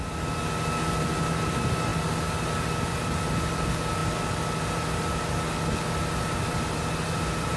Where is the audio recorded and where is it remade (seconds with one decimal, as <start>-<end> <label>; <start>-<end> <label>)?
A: 0.0-7.6 recorded